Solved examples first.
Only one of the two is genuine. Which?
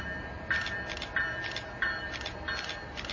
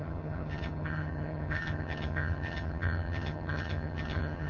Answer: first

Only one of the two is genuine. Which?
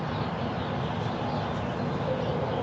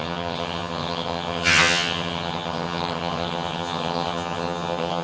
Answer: first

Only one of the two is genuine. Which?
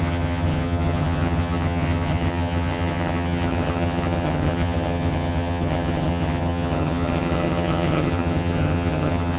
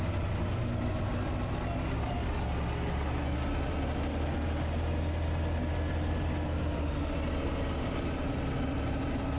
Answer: second